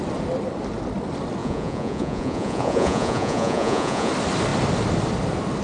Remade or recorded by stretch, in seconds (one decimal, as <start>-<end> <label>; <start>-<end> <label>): 0.0-1.4 recorded; 1.4-4.1 remade; 4.1-5.6 recorded